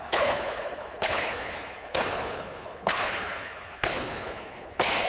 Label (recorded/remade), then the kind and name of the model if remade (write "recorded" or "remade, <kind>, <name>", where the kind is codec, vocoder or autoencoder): remade, codec, HILCodec